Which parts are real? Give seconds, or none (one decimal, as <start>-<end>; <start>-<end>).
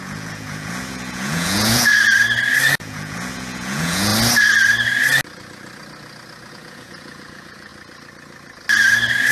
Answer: 1.9-2.8; 4.1-6.5; 7.7-9.3